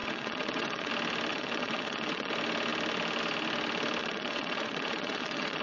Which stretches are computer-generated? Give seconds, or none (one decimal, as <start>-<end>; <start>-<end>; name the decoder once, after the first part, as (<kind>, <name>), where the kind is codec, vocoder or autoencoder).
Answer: 0.0-0.9 (vocoder, WaveNeXt); 1.3-2.3; 4.0-5.6